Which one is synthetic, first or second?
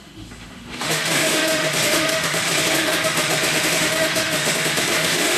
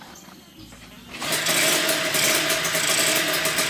first